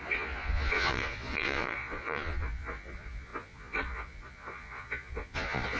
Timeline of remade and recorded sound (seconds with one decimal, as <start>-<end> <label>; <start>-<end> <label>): 0.0-5.8 remade